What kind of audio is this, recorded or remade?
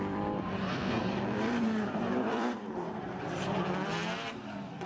remade